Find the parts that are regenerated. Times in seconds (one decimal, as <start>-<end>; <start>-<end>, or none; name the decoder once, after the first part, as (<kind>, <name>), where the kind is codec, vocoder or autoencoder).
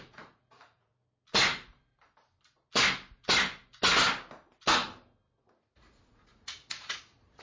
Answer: 0.0-0.9 (vocoder, Vocos); 5.3-7.4